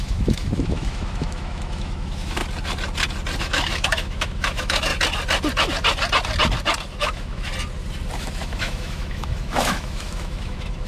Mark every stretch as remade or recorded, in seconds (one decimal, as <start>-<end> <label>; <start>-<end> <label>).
0.0-2.4 remade; 2.4-3.4 recorded; 3.4-4.9 remade; 4.9-7.0 recorded; 7.0-7.5 remade; 7.5-8.2 recorded; 8.2-10.9 remade